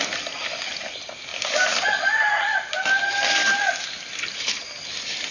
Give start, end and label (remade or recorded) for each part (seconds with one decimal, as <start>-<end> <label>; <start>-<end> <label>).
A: 0.0-5.3 recorded